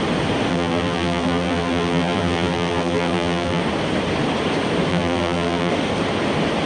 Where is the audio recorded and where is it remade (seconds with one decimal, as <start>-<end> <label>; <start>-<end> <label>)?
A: 0.0-0.5 recorded; 0.5-3.6 remade; 3.6-4.9 recorded; 4.9-5.7 remade; 5.7-6.7 recorded